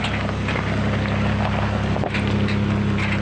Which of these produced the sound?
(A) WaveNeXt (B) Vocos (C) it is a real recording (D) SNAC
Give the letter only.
C